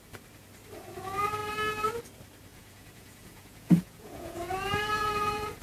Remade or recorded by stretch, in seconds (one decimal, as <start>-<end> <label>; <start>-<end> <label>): 0.0-2.5 recorded; 2.5-5.6 remade